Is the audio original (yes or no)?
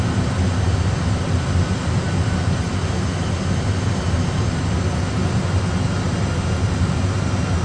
yes